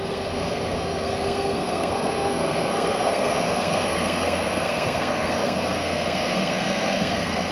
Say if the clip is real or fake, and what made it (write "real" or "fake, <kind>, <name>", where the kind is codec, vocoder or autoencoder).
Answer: fake, codec, SNAC